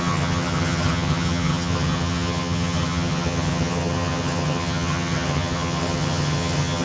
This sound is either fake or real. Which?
fake